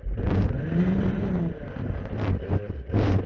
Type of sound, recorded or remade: remade